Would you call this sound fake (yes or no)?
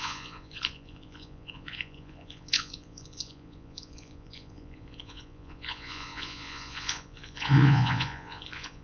yes